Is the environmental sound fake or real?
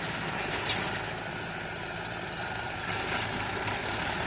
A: fake